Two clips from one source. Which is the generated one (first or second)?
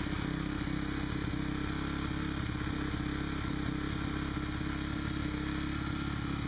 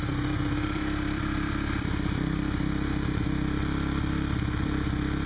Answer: second